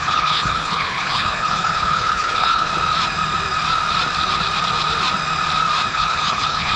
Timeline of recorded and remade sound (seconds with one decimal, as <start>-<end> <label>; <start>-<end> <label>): 0.0-2.7 remade; 2.7-5.9 recorded; 5.9-6.8 remade